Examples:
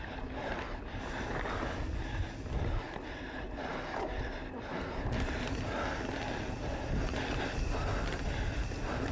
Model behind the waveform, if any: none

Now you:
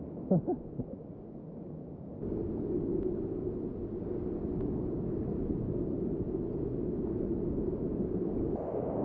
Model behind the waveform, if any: none